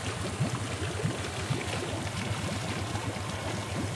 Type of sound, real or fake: real